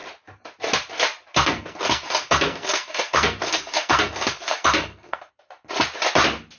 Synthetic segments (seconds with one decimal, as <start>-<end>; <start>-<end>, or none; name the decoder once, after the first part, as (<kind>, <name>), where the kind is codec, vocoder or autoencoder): 1.3-5.3 (codec, SNAC)